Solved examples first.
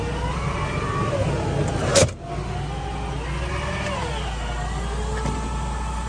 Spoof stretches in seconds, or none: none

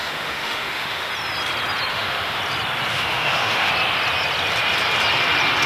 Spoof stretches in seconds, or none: 0.0-1.1 (autoencoder, DAC-VAE); 1.9-2.4; 2.9-3.7

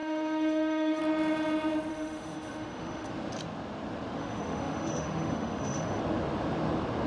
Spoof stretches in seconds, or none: 0.0-1.0 (autoencoder, DAC-VAE); 1.9-3.1; 4.2-6.0

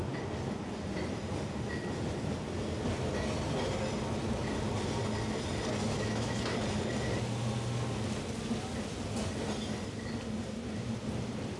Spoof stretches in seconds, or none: 5.8-6.4 (autoencoder, DAC-VAE)

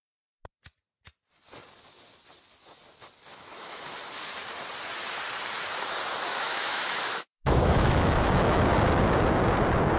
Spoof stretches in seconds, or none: 3.3-3.8 (autoencoder, DAC-VAE); 6.3-8.6

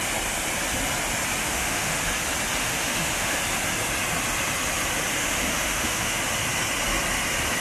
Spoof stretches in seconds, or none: 1.4-2.0 (autoencoder, DAC-VAE); 2.6-3.4; 5.1-6.2

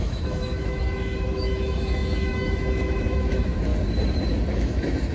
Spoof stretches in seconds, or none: 0.0-3.7 (autoencoder, DAC-VAE); 4.5-5.1

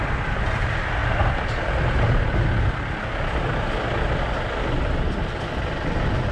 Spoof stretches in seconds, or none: none